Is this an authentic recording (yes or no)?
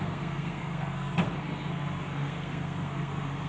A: no